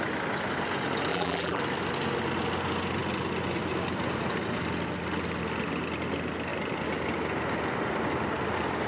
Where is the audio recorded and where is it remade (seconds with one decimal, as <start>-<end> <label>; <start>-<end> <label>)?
0.0-1.1 recorded; 1.1-1.6 remade; 1.6-8.9 recorded